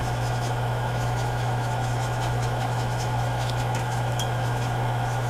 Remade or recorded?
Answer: remade